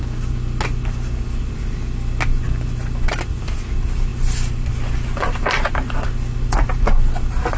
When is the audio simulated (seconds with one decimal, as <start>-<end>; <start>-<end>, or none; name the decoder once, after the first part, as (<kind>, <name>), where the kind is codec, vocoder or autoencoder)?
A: none